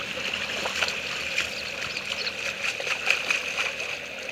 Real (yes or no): yes